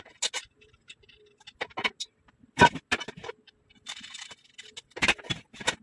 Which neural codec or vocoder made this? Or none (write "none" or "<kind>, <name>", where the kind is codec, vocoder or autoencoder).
none